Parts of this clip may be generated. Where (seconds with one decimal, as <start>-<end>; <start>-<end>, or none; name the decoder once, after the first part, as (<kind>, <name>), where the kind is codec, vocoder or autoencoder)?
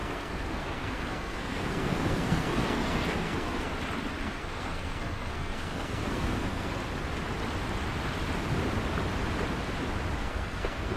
0.0-3.7 (codec, SNAC); 4.2-6.8; 10.2-11.0